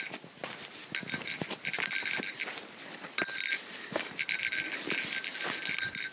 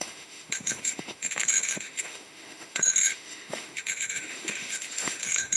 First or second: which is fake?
second